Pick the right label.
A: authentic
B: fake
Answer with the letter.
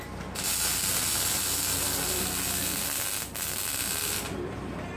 A